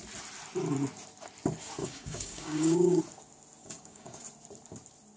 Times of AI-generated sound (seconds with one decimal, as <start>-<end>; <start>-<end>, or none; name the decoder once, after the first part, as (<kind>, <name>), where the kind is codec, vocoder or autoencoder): 1.8-3.0 (codec, DAC); 3.6-4.2